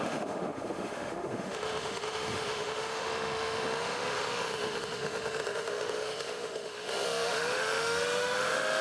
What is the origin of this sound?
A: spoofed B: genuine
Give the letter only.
A